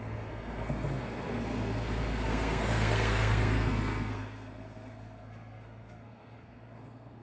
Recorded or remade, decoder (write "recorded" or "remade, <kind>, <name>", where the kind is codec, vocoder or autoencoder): remade, codec, SNAC